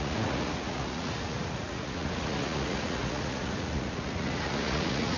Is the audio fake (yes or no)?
yes